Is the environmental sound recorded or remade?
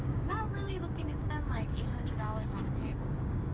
remade